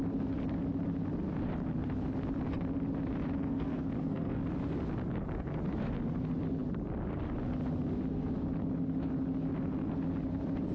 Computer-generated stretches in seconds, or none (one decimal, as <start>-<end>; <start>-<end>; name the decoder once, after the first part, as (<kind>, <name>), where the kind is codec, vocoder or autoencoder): 3.4-4.4 (codec, SNAC)